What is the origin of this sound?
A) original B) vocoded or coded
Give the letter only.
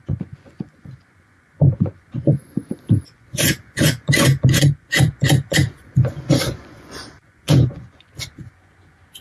B